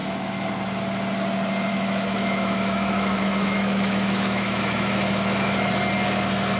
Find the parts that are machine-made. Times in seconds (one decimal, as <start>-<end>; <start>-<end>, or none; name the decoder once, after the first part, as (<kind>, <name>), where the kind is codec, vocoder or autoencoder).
0.0-0.5 (autoencoder, DAC-VAE); 1.7-5.7